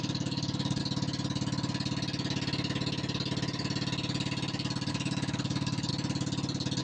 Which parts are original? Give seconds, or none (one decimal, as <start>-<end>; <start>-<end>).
0.8-4.9; 5.9-6.8